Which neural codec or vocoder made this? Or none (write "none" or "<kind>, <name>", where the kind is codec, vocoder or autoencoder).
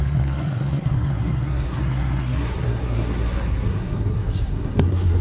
codec, SNAC